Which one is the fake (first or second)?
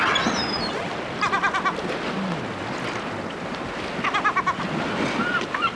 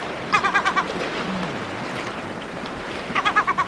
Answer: second